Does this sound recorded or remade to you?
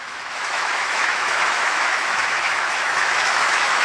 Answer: remade